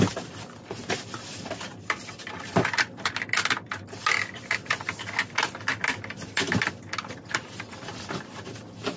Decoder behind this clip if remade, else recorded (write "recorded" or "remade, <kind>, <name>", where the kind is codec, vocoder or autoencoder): recorded